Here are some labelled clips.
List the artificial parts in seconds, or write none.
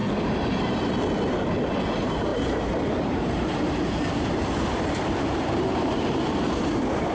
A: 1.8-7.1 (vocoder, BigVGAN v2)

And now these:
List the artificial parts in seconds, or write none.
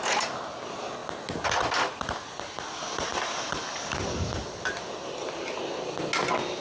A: none